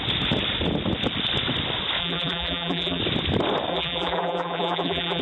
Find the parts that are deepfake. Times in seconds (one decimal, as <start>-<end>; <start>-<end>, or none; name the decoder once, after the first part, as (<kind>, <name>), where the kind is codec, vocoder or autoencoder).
2.0-3.0 (vocoder, BigVGAN v2); 3.7-5.2